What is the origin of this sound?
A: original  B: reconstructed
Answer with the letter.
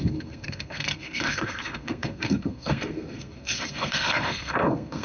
B